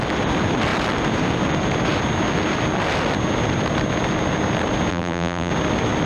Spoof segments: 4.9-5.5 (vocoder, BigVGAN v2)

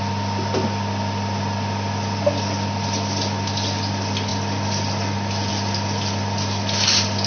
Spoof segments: none

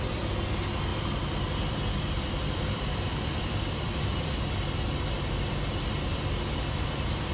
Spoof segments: 0.9-4.4 (vocoder, BigVGAN v2)